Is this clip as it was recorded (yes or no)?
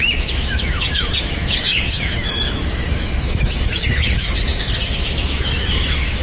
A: no